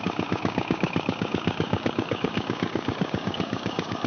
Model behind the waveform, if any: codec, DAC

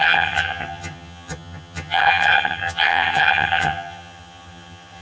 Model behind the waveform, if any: vocoder, HiFi-GAN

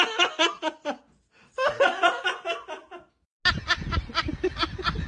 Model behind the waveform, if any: none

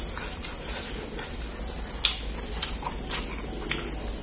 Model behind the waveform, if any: none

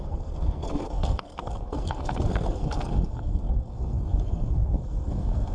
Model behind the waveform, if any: codec, SNAC